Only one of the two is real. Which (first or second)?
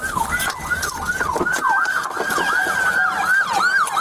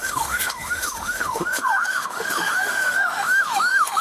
first